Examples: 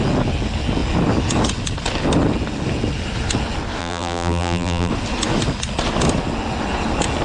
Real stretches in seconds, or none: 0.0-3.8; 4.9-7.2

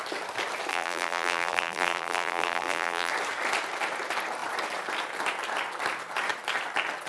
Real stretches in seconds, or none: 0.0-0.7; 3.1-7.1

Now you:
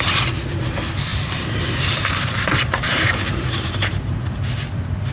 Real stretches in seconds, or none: 0.0-1.1; 4.2-5.1